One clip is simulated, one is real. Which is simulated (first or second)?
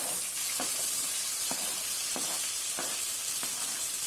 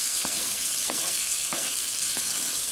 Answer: second